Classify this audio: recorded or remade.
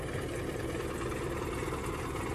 recorded